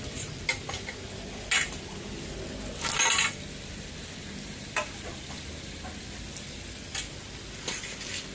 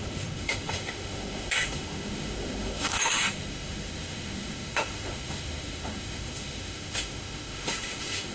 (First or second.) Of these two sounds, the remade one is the second